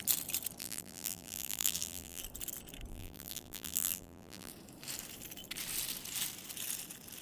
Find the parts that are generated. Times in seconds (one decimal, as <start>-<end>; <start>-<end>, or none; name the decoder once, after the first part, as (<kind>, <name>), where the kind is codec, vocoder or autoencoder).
0.6-2.2 (vocoder, BigVGAN v2); 2.9-4.5